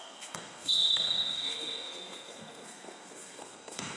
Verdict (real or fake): fake